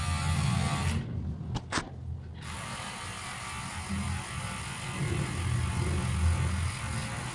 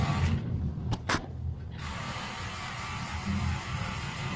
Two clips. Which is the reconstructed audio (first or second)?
second